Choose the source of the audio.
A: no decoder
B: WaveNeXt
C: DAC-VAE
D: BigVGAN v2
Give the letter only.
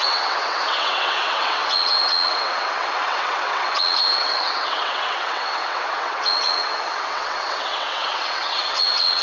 B